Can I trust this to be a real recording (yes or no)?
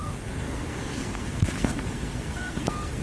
no